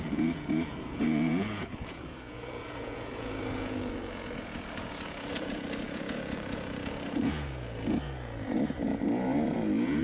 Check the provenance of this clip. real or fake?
fake